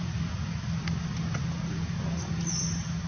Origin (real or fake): real